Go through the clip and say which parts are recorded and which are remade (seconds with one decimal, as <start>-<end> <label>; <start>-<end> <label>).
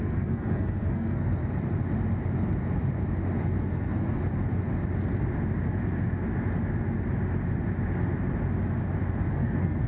0.0-1.4 remade; 1.4-3.6 recorded; 3.6-4.2 remade; 4.2-9.3 recorded; 9.3-9.9 remade